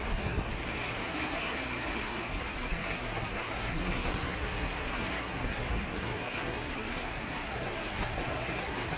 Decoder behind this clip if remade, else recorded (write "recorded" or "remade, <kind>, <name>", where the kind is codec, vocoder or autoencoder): remade, codec, SNAC